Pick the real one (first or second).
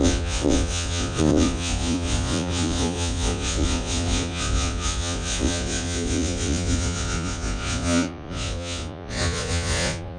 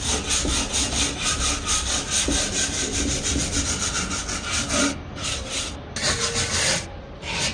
second